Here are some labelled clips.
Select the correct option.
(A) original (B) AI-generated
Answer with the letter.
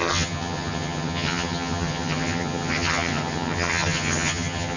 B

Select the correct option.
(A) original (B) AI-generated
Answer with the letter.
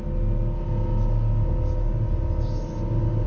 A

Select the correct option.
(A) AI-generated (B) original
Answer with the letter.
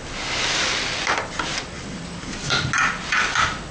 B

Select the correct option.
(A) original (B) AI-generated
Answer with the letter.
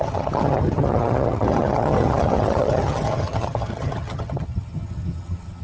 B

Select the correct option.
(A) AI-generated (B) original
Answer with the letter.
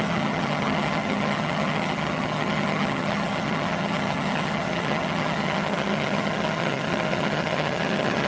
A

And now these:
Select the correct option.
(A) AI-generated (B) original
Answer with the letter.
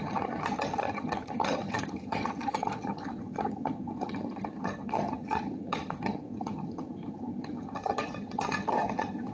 A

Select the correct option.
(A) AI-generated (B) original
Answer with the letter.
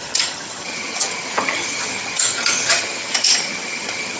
A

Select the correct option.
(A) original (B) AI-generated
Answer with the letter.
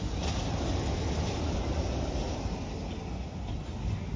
A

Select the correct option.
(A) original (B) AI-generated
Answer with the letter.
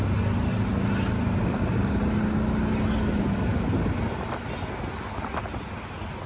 A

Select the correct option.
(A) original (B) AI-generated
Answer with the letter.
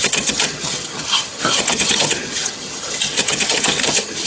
B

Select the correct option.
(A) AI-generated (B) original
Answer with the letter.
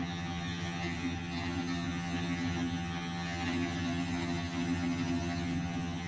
A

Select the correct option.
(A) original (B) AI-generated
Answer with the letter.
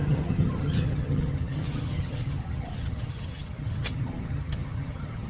B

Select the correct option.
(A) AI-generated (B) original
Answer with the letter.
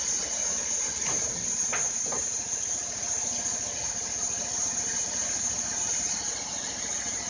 B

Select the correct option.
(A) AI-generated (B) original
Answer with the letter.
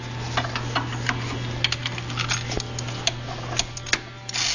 B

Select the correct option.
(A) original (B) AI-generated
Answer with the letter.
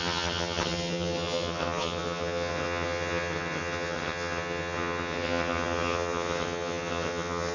B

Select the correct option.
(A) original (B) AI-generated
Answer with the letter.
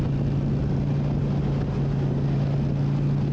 A